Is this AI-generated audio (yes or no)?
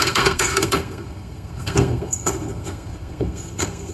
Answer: yes